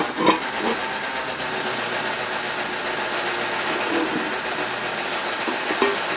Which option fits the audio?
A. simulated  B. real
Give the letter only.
B